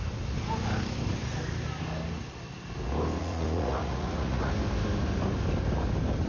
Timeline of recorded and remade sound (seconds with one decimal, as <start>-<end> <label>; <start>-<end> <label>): 0.0-3.2 recorded; 3.2-4.5 remade; 4.5-6.3 recorded